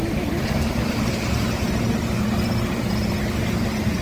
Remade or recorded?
recorded